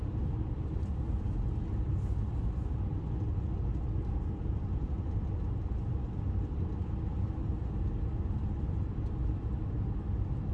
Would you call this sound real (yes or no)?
yes